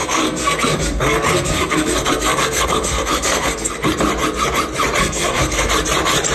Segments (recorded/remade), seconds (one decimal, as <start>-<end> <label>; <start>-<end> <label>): 0.0-3.7 remade; 3.7-5.0 recorded; 5.0-5.7 remade; 5.7-6.3 recorded